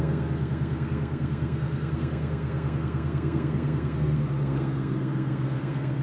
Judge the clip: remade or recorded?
remade